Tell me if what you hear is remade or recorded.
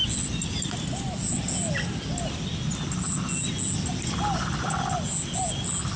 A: recorded